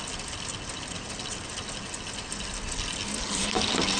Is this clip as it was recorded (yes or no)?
yes